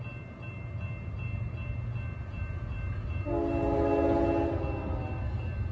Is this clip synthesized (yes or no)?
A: no